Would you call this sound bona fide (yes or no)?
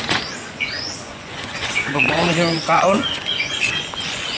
no